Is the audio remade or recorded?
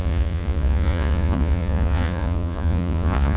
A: remade